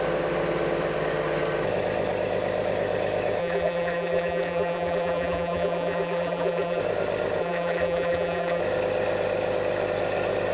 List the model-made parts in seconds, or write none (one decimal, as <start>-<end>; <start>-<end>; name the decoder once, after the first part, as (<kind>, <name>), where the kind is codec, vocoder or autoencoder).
3.4-6.8 (vocoder, BigVGAN v2); 7.4-8.6